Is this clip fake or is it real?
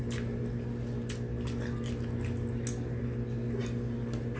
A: real